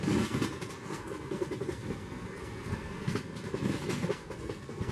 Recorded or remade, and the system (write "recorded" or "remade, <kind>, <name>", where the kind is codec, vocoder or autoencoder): remade, codec, SNAC